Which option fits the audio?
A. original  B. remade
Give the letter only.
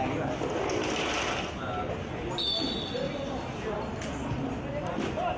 A